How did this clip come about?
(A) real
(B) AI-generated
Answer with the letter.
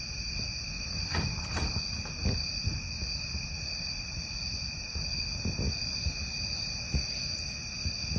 A